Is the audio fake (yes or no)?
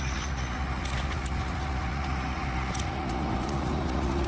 yes